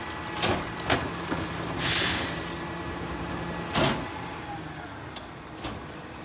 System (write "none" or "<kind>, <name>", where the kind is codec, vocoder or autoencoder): none